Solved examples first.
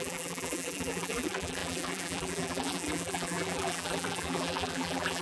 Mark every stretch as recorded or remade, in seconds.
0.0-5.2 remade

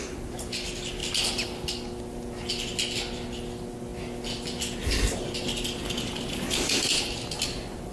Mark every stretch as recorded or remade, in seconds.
0.0-7.9 recorded

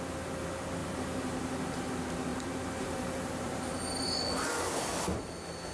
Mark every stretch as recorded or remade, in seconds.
0.0-0.8 recorded; 0.8-1.9 remade; 1.9-2.3 recorded; 2.3-3.7 remade; 3.7-5.7 recorded